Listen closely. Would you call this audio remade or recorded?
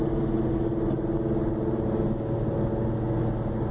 recorded